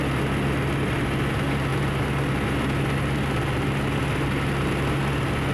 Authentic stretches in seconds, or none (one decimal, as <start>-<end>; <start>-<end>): 0.0-5.5

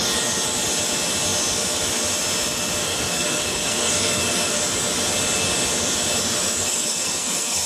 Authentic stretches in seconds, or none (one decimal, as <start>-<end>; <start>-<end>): 0.0-2.8; 4.6-6.6

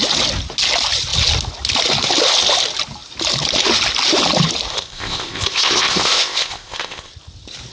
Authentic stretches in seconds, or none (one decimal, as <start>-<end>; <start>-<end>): 0.0-4.7; 7.1-7.7

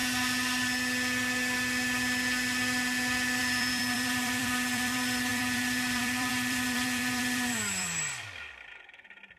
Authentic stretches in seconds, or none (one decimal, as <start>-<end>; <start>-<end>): 0.0-3.4

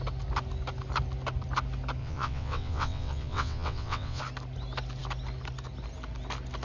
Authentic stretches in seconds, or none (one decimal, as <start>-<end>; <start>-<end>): 0.0-2.0; 4.2-6.6